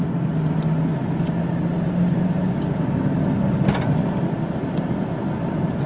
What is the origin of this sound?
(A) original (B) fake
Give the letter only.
A